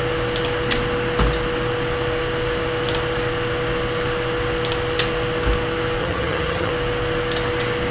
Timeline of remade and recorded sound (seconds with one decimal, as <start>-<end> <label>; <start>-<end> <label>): 0.0-6.0 recorded; 6.0-6.7 remade; 6.7-7.9 recorded